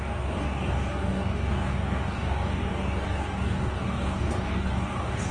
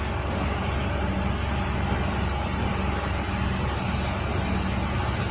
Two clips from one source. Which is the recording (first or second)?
second